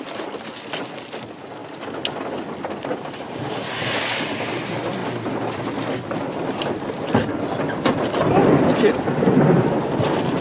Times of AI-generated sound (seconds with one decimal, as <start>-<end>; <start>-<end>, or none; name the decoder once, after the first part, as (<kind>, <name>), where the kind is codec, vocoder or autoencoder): 0.0-1.6 (vocoder, BigVGAN v2); 2.9-5.0; 6.0-10.4

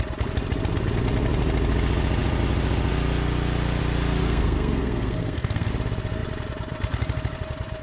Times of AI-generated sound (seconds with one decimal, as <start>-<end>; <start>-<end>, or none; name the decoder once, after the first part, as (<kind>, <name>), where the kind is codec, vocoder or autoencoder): 4.2-5.7 (codec, SNAC)

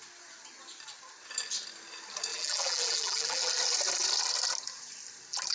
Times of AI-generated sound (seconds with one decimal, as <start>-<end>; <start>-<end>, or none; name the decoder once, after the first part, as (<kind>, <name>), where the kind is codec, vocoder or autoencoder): 2.3-3.5 (vocoder, BigVGAN v2)

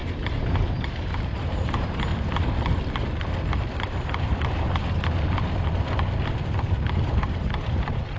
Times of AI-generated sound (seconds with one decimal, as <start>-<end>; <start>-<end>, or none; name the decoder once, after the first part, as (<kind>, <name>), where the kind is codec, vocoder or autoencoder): 0.5-2.1 (vocoder, BigVGAN v2); 3.5-4.8; 6.4-8.2

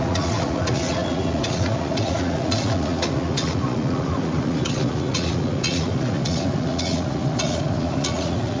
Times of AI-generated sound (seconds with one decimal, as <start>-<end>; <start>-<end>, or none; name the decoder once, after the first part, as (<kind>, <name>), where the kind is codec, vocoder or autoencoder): 0.0-8.6 (vocoder, Vocos)

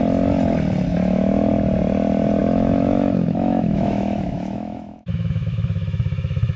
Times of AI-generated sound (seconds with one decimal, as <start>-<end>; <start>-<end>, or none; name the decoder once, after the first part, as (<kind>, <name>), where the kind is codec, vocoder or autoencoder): 0.9-1.5 (autoencoder, DAC-VAE); 2.4-6.6

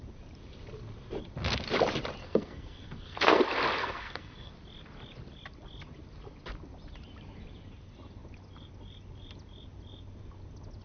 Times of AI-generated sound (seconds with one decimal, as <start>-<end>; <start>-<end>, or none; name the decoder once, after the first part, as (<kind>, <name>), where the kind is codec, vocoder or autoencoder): 2.2-3.4 (codec, SNAC); 3.8-4.5